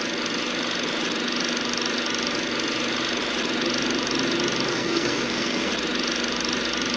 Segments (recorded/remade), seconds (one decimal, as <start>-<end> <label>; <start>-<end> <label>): 0.0-4.7 recorded; 4.7-5.7 remade; 5.7-7.0 recorded